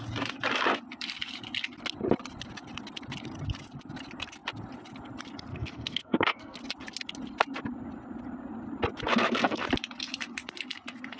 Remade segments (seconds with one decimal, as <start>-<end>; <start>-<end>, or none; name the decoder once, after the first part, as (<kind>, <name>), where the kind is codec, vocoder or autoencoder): 5.5-6.6 (codec, SNAC); 9.1-9.7